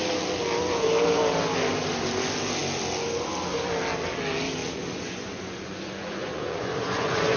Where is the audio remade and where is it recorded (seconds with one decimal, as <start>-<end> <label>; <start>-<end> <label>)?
0.0-4.6 recorded; 4.6-7.4 remade